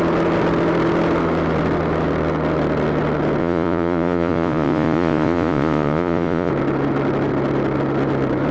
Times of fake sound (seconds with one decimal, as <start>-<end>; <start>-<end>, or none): 3.4-6.5